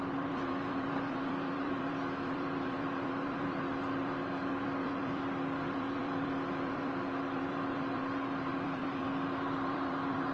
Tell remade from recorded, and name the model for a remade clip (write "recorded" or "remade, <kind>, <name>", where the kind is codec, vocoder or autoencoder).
remade, vocoder, BigVGAN v2